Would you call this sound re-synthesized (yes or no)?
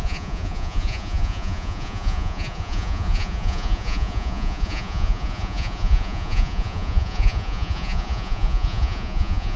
yes